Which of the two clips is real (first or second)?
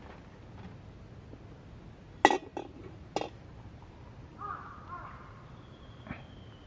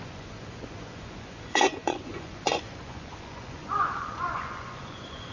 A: first